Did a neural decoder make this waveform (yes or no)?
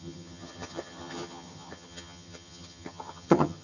yes